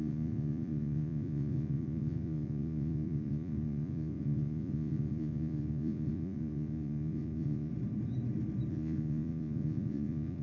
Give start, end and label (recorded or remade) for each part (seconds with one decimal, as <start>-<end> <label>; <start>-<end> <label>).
0.0-7.7 remade; 7.7-8.7 recorded; 8.7-10.4 remade